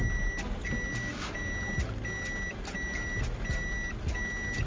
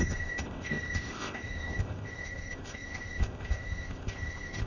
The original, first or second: first